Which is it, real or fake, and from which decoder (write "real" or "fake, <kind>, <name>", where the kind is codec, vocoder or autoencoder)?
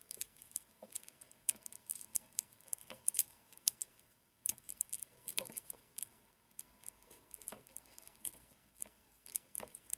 fake, codec, SNAC